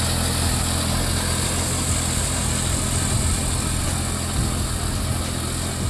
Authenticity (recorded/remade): recorded